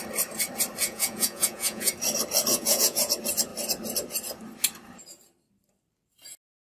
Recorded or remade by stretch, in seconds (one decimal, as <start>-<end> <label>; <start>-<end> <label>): 0.0-0.8 recorded; 0.8-1.9 remade; 1.9-2.5 recorded; 2.5-3.1 remade; 3.1-6.6 recorded